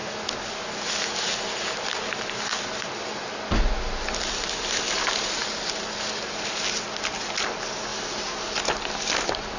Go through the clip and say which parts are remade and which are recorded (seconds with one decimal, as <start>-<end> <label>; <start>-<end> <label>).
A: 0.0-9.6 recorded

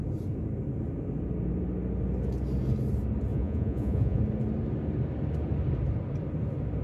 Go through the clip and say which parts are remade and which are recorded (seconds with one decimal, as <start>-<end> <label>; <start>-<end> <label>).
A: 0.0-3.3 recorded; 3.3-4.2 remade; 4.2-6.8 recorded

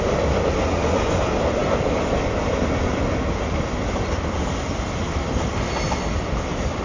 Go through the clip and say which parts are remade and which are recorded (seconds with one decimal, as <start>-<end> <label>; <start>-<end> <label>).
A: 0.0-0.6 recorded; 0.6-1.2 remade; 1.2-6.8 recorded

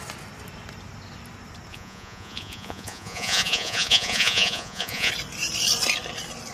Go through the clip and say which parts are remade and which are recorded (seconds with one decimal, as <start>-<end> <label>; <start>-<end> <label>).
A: 0.0-1.7 recorded; 1.7-5.1 remade; 5.1-6.5 recorded